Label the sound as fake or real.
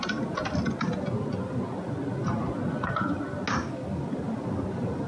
real